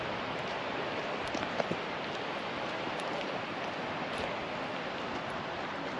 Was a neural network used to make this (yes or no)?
no